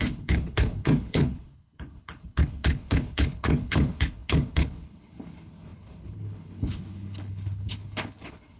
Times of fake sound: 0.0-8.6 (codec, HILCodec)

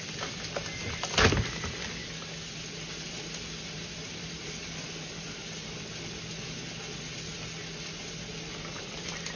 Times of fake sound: 0.0-2.0 (vocoder, BigVGAN v2); 3.1-5.4; 8.5-9.4

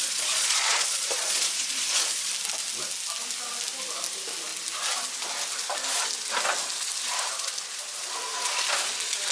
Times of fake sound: 0.0-2.3 (vocoder, Vocos)

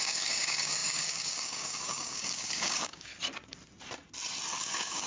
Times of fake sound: 0.0-3.1 (codec, DAC); 4.6-5.1

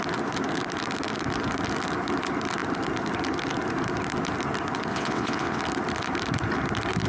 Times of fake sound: 4.9-5.6 (vocoder, WaveNeXt)

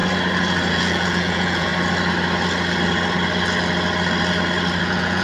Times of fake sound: 0.7-1.7 (vocoder, Vocos); 4.8-5.2

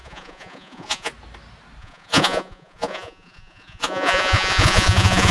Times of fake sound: 0.0-1.1 (vocoder, Vocos); 1.8-5.3

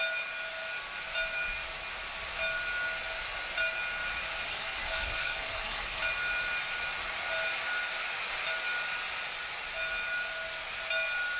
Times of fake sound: 4.5-6.0 (codec, SNAC)